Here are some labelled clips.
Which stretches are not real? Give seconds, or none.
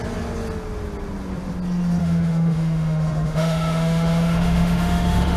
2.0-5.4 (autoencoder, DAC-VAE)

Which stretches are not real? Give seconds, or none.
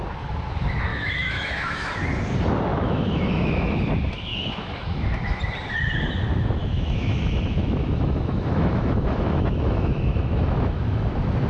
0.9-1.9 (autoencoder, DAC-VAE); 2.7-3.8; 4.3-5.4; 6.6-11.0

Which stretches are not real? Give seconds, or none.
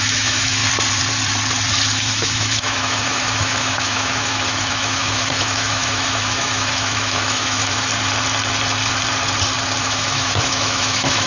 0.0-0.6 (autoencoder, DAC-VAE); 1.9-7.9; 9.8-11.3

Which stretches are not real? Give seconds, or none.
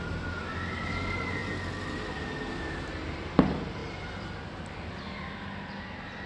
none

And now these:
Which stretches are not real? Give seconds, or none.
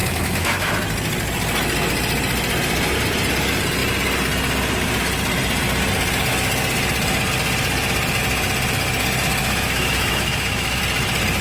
0.0-0.7 (autoencoder, DAC-VAE); 9.4-10.8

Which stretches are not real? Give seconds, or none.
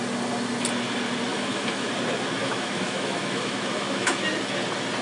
1.3-1.9 (autoencoder, DAC-VAE); 2.4-4.2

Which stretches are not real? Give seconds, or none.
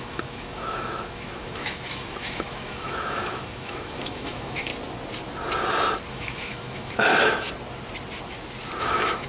0.0-4.7 (autoencoder, DAC-VAE); 6.1-7.1; 8.8-9.3